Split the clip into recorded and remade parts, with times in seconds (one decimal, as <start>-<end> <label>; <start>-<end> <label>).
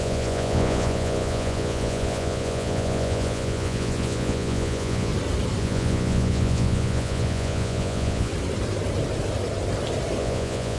0.0-5.1 remade; 5.1-5.6 recorded; 5.6-8.3 remade; 8.3-10.2 recorded; 10.2-10.8 remade